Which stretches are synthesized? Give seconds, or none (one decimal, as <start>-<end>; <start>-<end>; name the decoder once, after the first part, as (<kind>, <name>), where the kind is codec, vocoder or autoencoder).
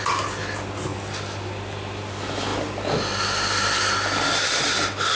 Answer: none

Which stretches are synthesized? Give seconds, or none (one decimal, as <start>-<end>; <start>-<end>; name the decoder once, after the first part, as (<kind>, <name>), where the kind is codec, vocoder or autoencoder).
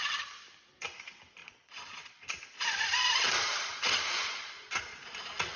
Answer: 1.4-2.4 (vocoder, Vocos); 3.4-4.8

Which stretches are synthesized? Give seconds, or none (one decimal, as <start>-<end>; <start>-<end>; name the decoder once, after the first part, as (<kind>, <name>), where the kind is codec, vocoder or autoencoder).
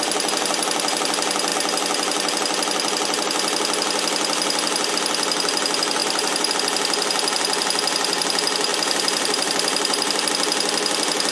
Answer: 6.0-6.5 (vocoder, BigVGAN v2); 8.7-10.3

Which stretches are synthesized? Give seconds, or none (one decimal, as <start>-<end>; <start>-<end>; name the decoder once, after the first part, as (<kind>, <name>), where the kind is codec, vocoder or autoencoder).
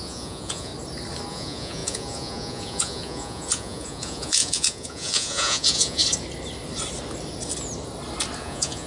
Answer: 0.0-0.7 (vocoder, Vocos); 1.3-6.0; 8.4-8.9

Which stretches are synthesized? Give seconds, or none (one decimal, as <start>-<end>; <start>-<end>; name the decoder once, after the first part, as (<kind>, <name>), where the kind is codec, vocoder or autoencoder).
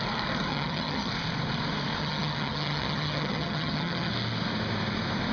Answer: 0.5-1.1 (vocoder, HiFi-GAN); 2.0-4.1